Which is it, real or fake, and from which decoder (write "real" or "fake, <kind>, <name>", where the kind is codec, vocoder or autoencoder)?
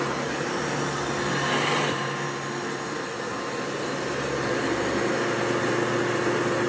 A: real